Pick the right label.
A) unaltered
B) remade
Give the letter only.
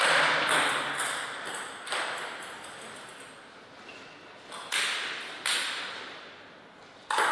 A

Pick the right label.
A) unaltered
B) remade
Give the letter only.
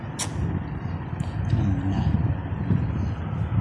A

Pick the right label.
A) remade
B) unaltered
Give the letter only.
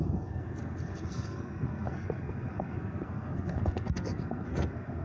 A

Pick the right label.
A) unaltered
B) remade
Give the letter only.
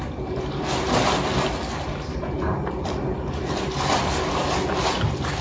A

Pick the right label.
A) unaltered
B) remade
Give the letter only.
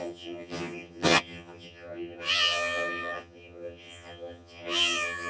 B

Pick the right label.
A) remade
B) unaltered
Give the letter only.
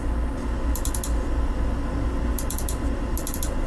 B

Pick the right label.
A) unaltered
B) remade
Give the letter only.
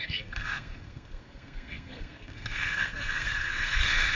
B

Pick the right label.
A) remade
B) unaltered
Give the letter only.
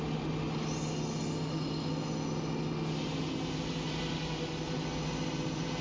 B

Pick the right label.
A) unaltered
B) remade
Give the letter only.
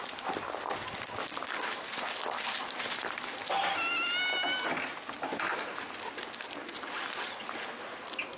A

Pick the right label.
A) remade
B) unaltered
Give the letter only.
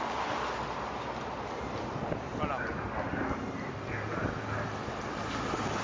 B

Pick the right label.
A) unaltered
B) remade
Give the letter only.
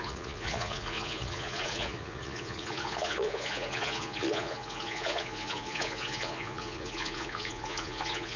B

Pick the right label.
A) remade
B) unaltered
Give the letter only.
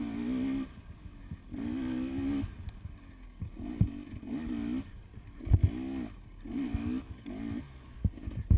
B